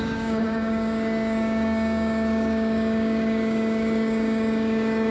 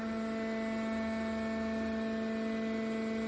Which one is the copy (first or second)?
first